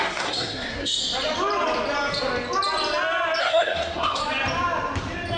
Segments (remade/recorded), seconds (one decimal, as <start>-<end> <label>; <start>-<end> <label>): 0.0-1.0 remade; 1.0-3.4 recorded; 3.4-4.2 remade; 4.2-5.4 recorded